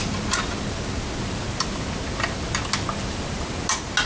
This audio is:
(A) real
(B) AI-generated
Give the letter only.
A